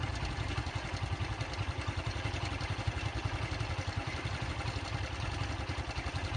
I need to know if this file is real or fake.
real